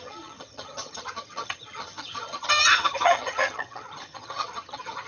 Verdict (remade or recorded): remade